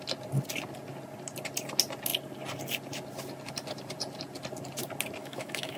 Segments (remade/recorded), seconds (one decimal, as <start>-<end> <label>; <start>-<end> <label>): 0.0-5.2 recorded; 5.2-5.8 remade